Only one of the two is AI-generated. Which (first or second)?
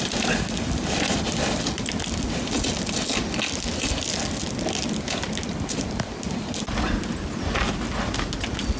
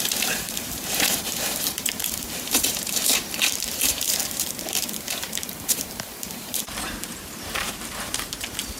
second